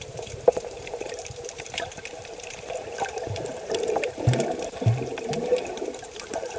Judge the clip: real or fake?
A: fake